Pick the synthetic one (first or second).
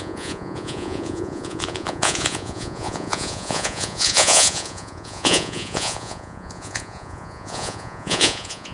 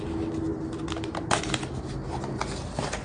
first